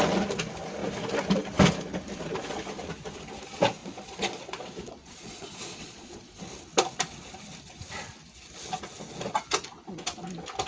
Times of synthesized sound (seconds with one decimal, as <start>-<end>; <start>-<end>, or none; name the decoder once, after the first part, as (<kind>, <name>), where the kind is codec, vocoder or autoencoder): 3.8-6.4 (vocoder, Vocos)

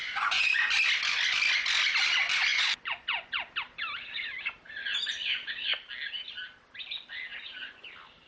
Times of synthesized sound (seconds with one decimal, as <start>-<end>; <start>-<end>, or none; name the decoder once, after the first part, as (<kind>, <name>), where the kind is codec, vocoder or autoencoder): 0.0-0.5 (vocoder, Vocos); 2.5-3.4; 7.3-7.9